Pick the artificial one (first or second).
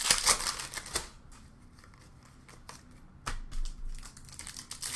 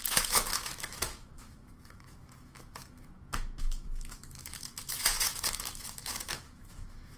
second